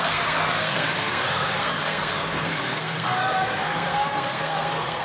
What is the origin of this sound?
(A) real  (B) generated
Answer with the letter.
B